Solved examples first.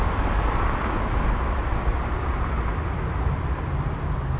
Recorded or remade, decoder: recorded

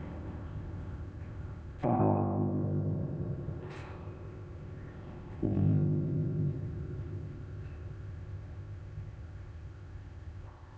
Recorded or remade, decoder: remade, codec, ZipCodec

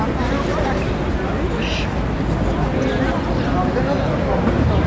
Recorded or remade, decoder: recorded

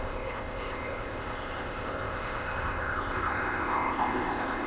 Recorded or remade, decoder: remade, codec, ZipCodec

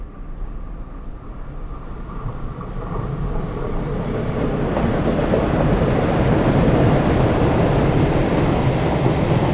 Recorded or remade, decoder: recorded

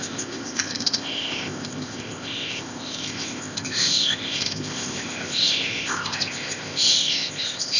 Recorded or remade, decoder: remade, codec, ZipCodec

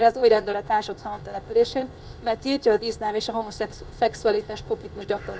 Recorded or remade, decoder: remade, codec, ZipCodec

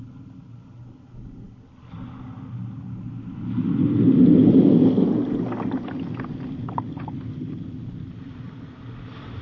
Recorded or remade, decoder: recorded